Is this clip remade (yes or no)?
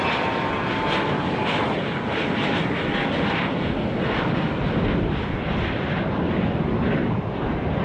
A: no